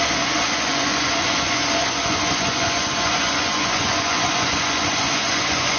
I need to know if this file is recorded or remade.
remade